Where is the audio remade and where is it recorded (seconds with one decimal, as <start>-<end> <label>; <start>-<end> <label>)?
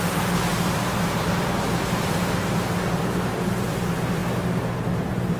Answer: 0.0-5.4 recorded